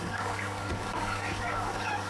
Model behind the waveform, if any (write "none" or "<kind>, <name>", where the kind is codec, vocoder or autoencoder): codec, DAC